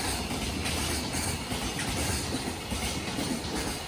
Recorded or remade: recorded